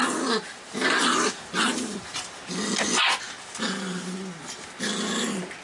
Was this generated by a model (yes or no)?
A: no